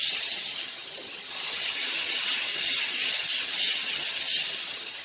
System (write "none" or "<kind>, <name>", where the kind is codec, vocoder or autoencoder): vocoder, HiFi-GAN